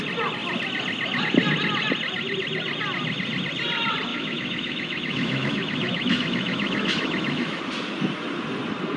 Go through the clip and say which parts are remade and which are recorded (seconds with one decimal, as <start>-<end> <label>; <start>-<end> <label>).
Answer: 0.0-4.1 recorded; 4.1-7.6 remade; 7.6-9.0 recorded